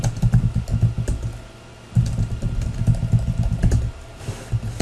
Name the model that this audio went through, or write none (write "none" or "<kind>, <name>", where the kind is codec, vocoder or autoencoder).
none